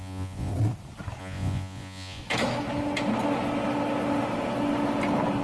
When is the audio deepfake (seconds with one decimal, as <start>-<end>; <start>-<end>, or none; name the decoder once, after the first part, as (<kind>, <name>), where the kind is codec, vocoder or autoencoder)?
0.0-0.5 (vocoder, Vocos); 1.2-2.2